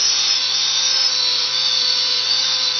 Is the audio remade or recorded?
remade